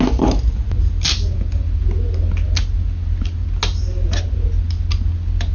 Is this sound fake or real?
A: real